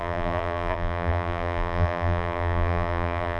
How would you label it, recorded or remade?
remade